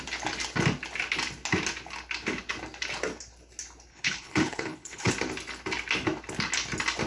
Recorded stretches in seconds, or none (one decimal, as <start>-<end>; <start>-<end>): 0.0-3.9; 5.1-7.1